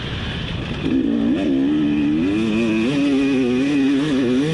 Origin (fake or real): real